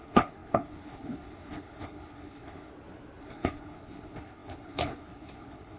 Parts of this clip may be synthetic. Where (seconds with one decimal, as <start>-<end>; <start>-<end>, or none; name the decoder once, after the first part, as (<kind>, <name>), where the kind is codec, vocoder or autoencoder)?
0.0-2.7 (codec, HILCodec); 3.2-5.8